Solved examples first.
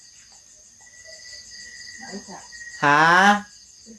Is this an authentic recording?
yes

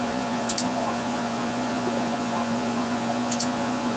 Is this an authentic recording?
no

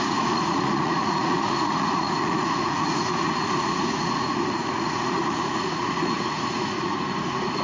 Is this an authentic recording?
no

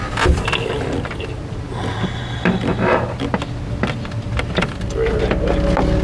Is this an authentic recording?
yes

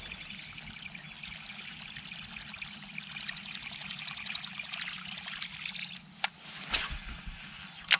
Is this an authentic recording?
yes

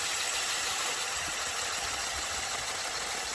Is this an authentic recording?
yes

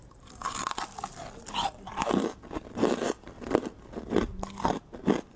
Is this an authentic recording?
yes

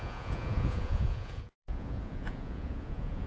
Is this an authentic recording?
no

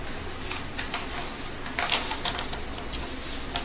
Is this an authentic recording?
yes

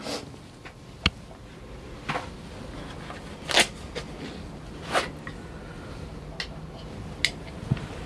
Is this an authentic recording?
yes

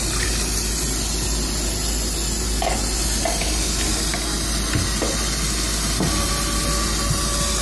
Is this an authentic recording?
yes